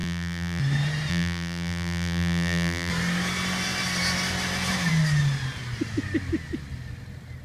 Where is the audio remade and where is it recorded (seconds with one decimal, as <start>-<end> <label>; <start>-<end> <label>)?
0.0-0.6 remade; 0.6-1.1 recorded; 1.1-2.9 remade; 2.9-7.4 recorded